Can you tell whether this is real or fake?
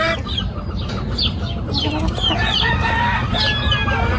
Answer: real